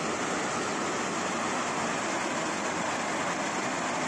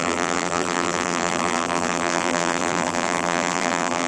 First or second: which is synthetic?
second